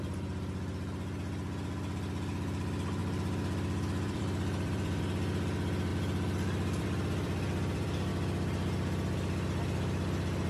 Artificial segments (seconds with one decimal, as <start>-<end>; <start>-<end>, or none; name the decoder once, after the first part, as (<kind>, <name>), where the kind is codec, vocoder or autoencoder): 3.0-5.0 (vocoder, BigVGAN v2); 5.9-8.1